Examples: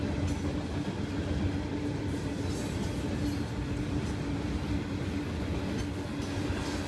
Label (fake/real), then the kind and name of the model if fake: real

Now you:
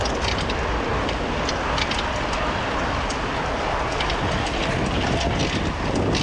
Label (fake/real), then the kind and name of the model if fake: real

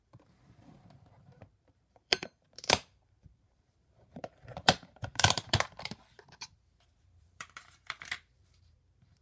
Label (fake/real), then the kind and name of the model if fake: fake, vocoder, BigVGAN v2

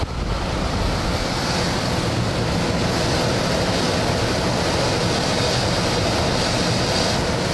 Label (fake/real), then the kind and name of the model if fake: real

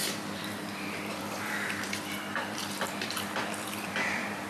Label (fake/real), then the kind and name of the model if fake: fake, vocoder, BigVGAN v2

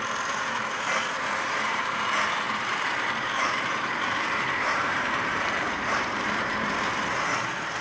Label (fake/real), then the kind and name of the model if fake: fake, vocoder, BigVGAN v2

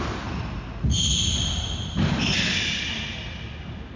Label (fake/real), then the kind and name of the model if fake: real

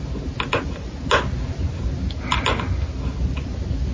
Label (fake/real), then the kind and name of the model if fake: real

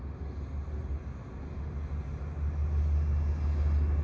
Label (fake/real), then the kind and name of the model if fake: real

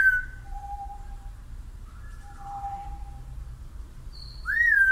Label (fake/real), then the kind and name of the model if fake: fake, vocoder, BigVGAN v2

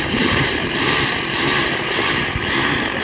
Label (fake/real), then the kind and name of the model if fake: fake, vocoder, BigVGAN v2